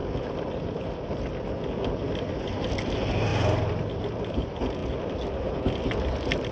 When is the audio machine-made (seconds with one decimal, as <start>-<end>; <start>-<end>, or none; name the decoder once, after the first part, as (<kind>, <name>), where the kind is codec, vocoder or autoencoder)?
none